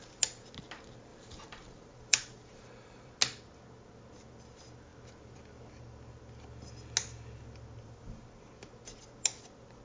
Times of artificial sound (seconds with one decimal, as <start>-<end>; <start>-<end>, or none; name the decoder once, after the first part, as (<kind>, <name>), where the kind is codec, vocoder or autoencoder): 1.1-3.1 (vocoder, BigVGAN v2)